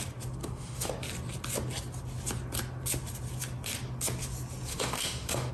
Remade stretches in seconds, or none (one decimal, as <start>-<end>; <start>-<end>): 0.4-0.9; 4.7-5.5